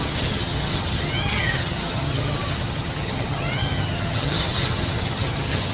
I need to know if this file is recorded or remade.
remade